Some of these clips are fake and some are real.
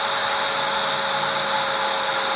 real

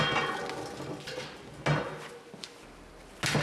real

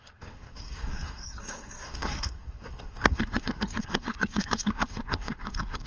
fake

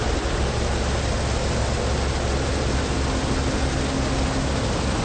real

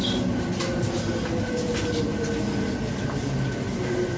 real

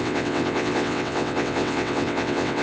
fake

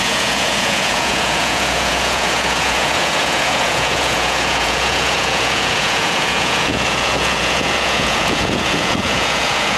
fake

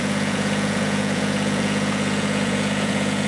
fake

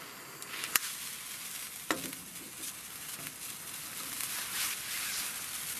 real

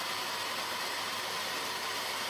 fake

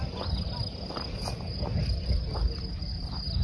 real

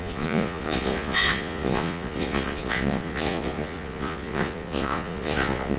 fake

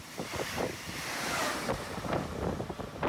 real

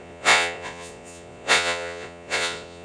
fake